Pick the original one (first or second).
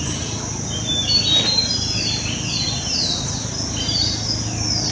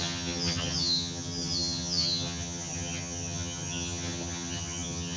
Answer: first